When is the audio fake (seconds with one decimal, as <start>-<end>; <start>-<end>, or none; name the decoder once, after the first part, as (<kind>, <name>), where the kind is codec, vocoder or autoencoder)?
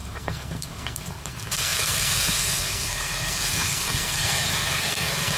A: 0.0-5.4 (codec, SNAC)